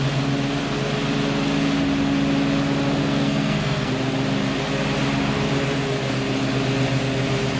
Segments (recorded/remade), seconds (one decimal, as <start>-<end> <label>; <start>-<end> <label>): 0.0-3.0 recorded; 3.0-3.9 remade; 3.9-7.6 recorded

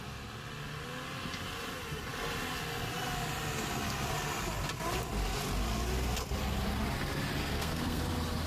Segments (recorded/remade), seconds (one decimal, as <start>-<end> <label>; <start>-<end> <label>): 0.0-7.4 recorded; 7.4-8.0 remade; 8.0-8.5 recorded

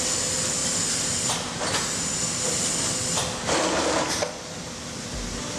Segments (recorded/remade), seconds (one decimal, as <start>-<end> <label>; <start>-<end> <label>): 0.0-5.6 recorded

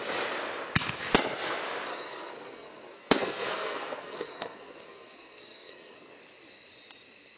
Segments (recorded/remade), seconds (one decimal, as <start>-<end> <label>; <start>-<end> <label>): 0.0-1.9 recorded; 1.9-6.1 remade; 6.1-7.4 recorded

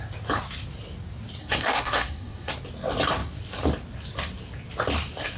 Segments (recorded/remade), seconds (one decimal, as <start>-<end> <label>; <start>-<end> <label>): 0.0-1.4 recorded; 1.4-2.5 remade; 2.5-5.4 recorded

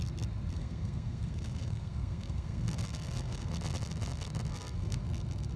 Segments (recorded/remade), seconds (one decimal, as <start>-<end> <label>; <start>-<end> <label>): 0.0-0.5 recorded; 0.5-3.5 remade; 3.5-4.5 recorded; 4.5-5.0 remade; 5.0-5.6 recorded